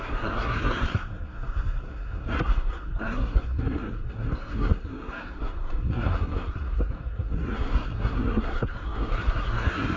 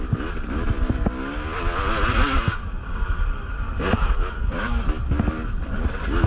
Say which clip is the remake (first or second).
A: first